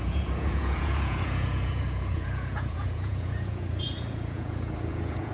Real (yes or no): no